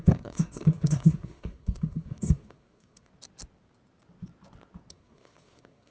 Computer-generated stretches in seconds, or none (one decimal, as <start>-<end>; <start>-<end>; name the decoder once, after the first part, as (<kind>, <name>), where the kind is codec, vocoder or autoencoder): 0.0-3.1 (codec, SNAC); 4.9-5.9